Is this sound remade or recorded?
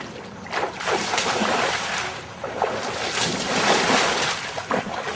recorded